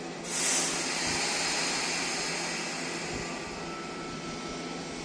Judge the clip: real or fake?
real